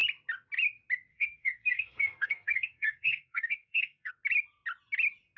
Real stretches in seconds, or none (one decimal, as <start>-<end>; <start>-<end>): 0.0-1.1; 4.1-5.4